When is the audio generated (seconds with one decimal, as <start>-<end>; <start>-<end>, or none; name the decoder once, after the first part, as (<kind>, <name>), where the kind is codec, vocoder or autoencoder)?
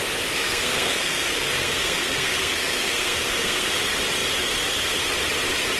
0.4-3.8 (codec, SNAC)